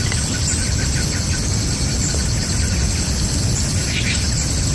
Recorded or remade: recorded